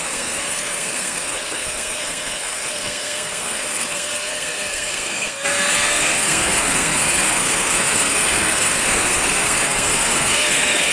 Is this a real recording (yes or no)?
no